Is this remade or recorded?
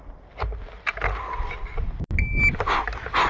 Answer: recorded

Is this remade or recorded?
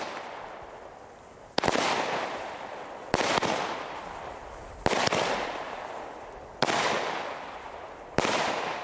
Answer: remade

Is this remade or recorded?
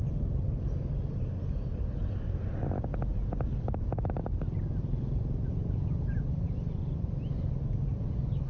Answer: recorded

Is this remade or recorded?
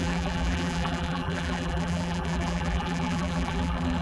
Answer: remade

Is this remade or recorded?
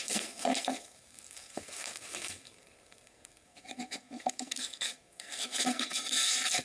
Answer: remade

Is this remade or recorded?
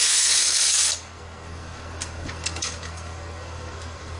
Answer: remade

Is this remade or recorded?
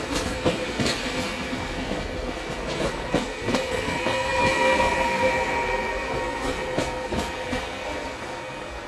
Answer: remade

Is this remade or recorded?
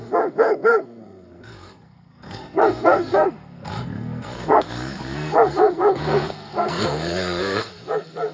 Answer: remade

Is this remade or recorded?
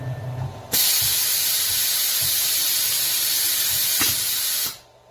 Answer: recorded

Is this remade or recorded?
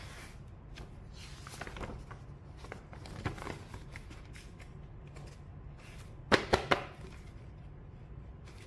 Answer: recorded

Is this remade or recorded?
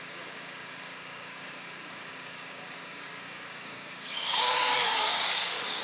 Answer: remade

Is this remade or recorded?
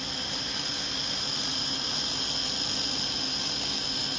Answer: recorded